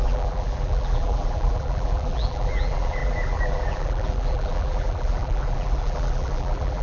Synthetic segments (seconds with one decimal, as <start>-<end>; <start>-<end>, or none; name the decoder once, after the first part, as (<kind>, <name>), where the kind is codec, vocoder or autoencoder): 0.0-6.8 (vocoder, BigVGAN v2)